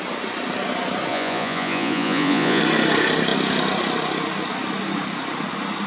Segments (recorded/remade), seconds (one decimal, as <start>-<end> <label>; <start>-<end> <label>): 0.0-1.1 recorded; 1.1-2.6 remade; 2.6-5.9 recorded